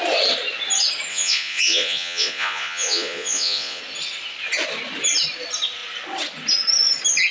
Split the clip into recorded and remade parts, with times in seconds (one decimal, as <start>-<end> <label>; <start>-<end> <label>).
0.0-1.1 recorded; 1.1-3.8 remade; 3.8-7.3 recorded